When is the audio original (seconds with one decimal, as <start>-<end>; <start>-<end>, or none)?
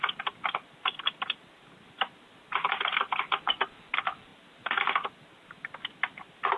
0.0-6.6